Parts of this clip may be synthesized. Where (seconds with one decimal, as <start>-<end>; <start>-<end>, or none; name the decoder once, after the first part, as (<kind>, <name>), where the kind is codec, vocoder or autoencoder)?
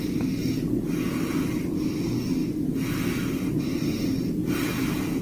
none